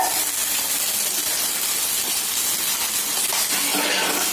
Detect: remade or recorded recorded